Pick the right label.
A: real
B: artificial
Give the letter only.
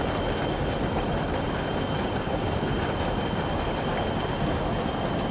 A